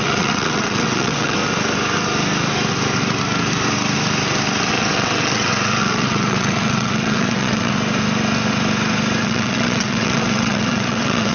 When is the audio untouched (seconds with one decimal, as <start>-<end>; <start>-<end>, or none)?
1.4-4.7; 7.7-9.2